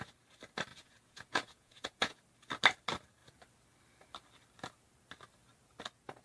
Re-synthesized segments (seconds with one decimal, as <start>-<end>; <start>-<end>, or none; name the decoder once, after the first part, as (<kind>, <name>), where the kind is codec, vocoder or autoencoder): 0.7-2.2 (vocoder, Vocos)